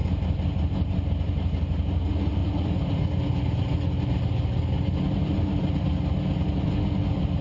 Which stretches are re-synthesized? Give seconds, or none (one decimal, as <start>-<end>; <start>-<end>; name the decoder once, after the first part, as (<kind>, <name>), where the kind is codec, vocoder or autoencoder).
none